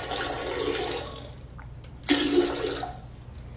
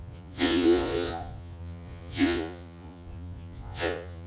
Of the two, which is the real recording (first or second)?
first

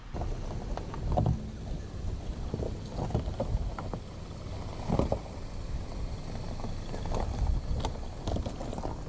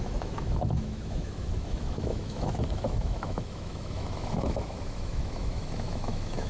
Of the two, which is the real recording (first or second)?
first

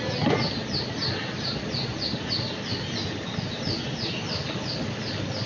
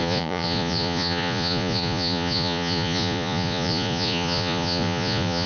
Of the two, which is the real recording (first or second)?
first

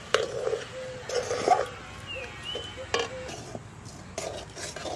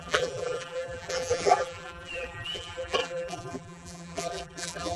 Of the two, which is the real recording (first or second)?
first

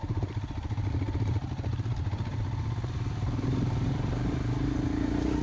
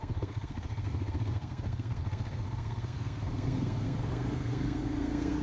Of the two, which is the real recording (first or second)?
first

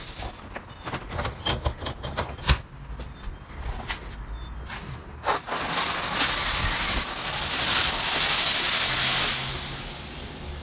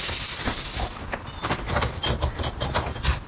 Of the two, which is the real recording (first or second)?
first